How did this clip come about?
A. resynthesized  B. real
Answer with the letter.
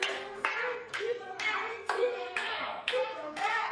A